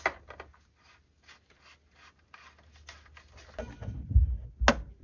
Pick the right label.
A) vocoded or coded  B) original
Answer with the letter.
B